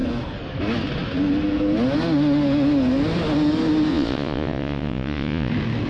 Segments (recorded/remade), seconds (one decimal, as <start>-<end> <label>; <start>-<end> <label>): 0.0-3.9 recorded; 3.9-5.5 remade; 5.5-5.9 recorded